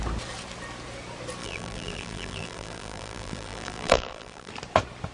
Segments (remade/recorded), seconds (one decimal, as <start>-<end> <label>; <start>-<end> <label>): 0.0-1.4 recorded; 1.4-4.5 remade; 4.5-5.1 recorded